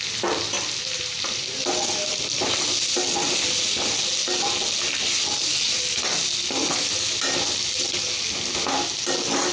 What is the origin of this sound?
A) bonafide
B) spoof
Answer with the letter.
A